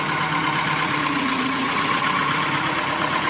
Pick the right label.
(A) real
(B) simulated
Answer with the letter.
B